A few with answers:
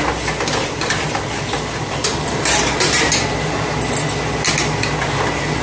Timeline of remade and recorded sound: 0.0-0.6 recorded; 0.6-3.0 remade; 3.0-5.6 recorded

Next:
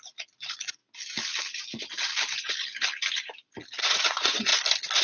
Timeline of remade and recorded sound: 0.0-0.8 remade; 0.8-3.8 recorded; 3.8-4.5 remade; 4.5-5.0 recorded

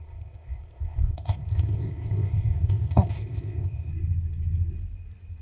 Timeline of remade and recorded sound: 0.0-3.9 remade; 3.9-5.4 recorded